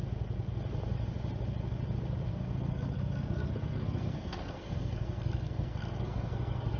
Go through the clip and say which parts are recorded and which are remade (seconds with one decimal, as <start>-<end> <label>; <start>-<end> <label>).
0.0-2.3 recorded; 2.3-6.8 remade